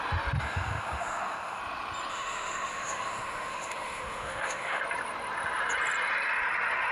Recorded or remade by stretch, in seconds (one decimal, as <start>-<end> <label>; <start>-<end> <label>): 0.0-0.4 recorded; 0.4-1.6 remade; 1.6-2.1 recorded; 2.1-4.8 remade; 4.8-6.9 recorded